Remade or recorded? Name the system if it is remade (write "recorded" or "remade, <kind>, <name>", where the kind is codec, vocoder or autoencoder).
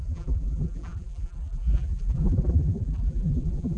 remade, vocoder, BigVGAN v2